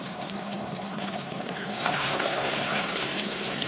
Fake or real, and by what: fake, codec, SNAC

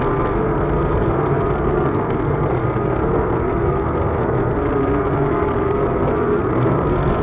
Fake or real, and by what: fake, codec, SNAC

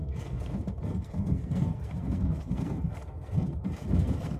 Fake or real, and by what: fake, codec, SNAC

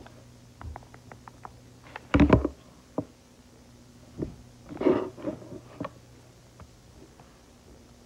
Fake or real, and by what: real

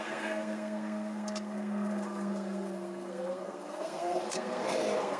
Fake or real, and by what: fake, codec, SNAC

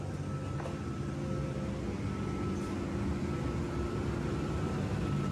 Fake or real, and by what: real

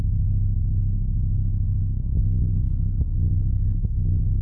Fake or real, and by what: real